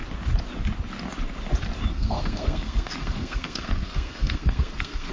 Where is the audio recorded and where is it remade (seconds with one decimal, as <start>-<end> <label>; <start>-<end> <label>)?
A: 0.0-1.9 recorded; 1.9-5.1 remade